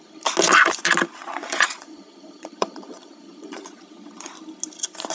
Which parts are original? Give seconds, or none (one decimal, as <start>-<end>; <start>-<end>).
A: 0.0-1.2; 4.3-5.1